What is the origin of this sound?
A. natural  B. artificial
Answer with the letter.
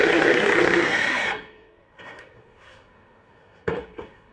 B